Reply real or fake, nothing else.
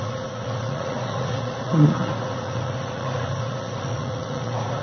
fake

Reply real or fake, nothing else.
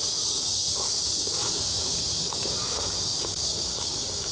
fake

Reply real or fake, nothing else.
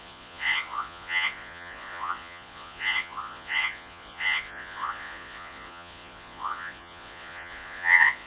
fake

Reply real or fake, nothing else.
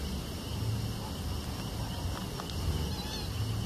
real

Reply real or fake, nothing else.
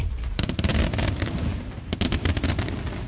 real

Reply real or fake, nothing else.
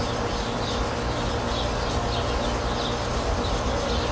real